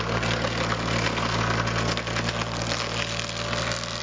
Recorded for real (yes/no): yes